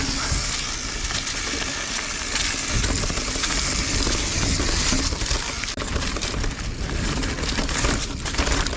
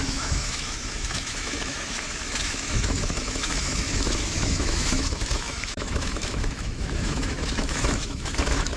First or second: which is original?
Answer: first